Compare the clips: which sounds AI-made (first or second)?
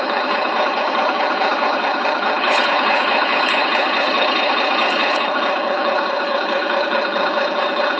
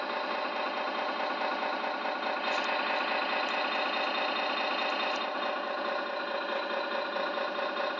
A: first